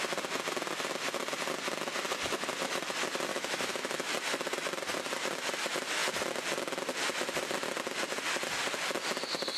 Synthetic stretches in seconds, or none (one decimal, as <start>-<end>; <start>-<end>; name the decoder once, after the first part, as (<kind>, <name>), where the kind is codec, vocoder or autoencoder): 3.3-4.1 (autoencoder, DAC-VAE)